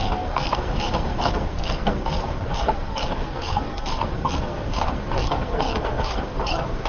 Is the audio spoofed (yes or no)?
yes